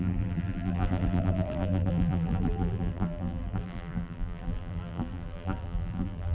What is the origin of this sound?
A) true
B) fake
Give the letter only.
B